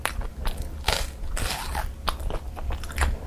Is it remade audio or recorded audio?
recorded